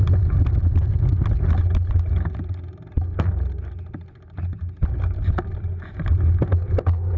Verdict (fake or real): real